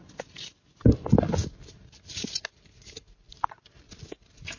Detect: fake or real real